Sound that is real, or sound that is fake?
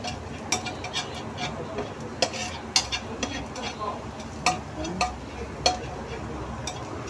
real